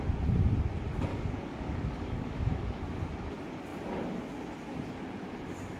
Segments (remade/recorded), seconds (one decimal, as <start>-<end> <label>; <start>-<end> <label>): 0.0-1.1 recorded; 1.1-2.8 remade; 2.8-5.8 recorded

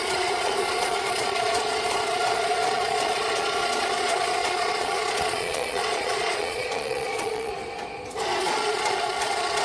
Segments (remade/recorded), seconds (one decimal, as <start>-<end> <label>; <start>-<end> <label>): 0.0-7.5 remade; 7.5-8.4 recorded; 8.4-9.6 remade

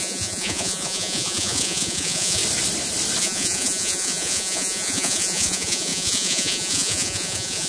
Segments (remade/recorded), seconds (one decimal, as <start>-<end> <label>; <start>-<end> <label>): 0.0-2.4 remade; 2.4-3.2 recorded; 3.2-7.7 remade

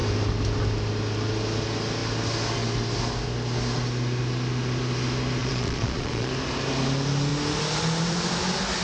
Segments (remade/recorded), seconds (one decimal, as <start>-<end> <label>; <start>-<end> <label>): 0.0-5.4 recorded; 5.4-6.3 remade; 6.3-8.8 recorded